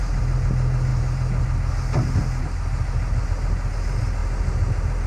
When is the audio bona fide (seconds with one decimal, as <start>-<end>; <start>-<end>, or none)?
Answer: 0.0-5.1